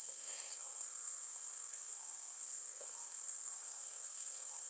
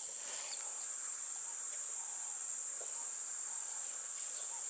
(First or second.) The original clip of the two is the second